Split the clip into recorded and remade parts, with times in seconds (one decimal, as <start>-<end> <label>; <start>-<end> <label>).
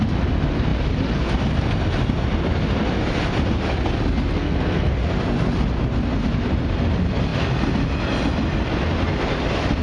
0.0-4.3 recorded; 4.3-4.9 remade; 4.9-9.8 recorded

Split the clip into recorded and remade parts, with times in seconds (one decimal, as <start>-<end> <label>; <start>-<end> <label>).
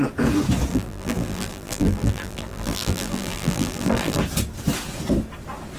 0.0-0.7 recorded; 0.7-4.2 remade; 4.2-5.8 recorded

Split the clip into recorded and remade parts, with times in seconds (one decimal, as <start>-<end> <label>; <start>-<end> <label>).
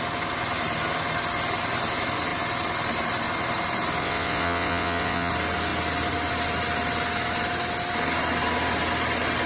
0.0-4.0 recorded; 4.0-5.3 remade; 5.3-9.5 recorded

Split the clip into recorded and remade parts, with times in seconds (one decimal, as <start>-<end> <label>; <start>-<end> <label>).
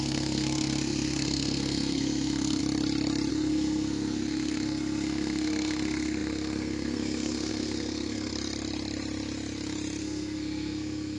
0.0-2.6 remade; 2.6-3.3 recorded; 3.3-8.3 remade; 8.3-10.0 recorded; 10.0-11.2 remade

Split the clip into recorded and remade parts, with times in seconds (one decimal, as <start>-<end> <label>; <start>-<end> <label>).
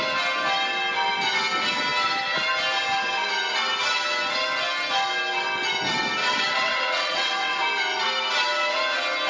0.0-6.2 recorded; 6.2-7.6 remade; 7.6-9.3 recorded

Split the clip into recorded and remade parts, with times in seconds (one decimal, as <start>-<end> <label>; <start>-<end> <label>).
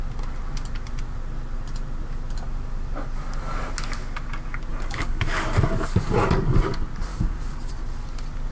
0.0-4.7 recorded; 4.7-6.6 remade; 6.6-7.1 recorded; 7.1-7.7 remade; 7.7-8.5 recorded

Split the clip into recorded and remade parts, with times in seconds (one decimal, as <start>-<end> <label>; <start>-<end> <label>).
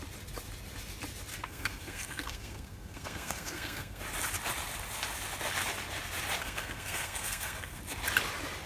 0.0-1.3 recorded; 1.3-4.0 remade; 4.0-6.4 recorded; 6.4-7.8 remade; 7.8-8.7 recorded